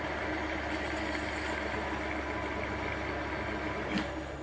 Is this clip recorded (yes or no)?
yes